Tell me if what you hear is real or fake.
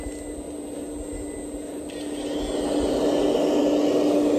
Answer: real